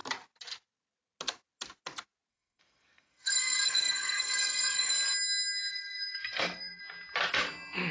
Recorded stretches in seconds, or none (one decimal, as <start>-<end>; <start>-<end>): 0.0-2.3; 4.9-5.7; 6.8-7.9